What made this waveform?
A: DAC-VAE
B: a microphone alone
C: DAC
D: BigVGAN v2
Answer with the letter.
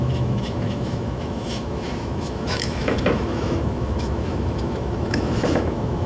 A